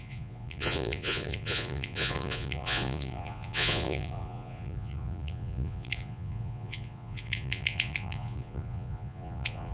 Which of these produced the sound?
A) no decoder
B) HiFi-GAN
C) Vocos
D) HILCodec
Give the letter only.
C